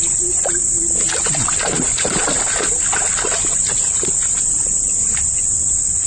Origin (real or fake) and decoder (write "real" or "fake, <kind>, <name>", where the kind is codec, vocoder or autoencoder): real